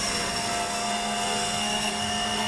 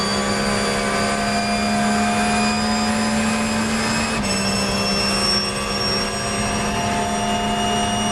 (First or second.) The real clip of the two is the second